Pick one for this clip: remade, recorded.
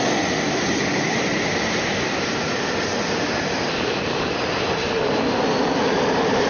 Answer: recorded